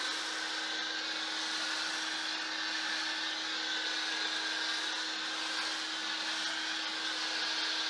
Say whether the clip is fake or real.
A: real